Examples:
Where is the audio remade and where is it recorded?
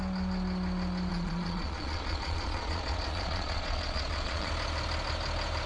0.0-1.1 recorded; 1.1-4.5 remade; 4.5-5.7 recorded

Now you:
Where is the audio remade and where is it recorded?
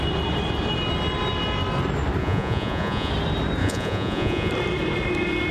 0.0-2.2 recorded; 2.2-3.1 remade; 3.1-3.6 recorded; 3.6-4.5 remade; 4.5-5.5 recorded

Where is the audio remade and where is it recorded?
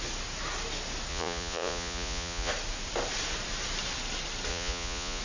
0.0-1.1 recorded; 1.1-2.5 remade; 2.5-4.5 recorded; 4.5-5.2 remade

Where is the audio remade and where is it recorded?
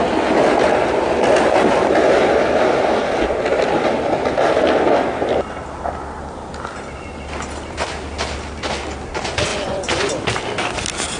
0.0-9.5 recorded; 9.5-10.1 remade; 10.1-11.2 recorded